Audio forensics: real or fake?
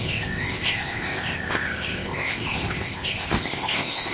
fake